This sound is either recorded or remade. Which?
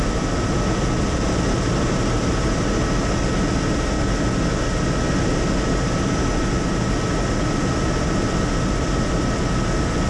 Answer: recorded